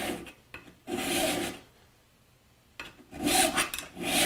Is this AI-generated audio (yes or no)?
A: no